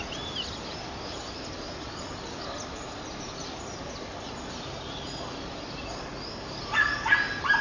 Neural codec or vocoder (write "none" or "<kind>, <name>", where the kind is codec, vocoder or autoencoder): none